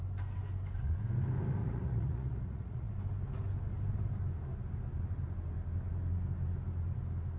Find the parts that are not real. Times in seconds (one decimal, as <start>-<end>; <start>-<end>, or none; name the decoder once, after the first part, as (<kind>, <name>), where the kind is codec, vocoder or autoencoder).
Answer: 1.6-2.9 (vocoder, Vocos)

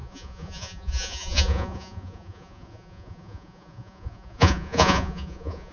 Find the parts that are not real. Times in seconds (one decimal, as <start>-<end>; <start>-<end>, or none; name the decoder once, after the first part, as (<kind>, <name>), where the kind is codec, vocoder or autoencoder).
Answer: 0.0-5.7 (vocoder, Vocos)

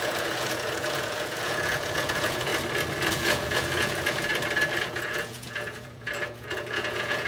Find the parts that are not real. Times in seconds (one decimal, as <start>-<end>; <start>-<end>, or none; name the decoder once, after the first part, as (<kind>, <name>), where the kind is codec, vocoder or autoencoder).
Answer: 0.0-2.5 (vocoder, Vocos); 3.1-4.3; 4.8-7.3

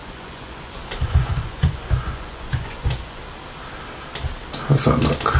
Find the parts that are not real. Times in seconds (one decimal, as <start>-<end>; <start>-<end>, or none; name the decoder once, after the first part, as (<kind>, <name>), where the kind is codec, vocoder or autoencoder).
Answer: 0.0-3.2 (vocoder, Vocos)